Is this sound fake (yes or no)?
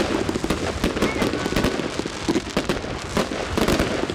no